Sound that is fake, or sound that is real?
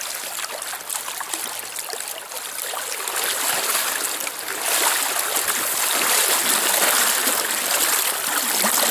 real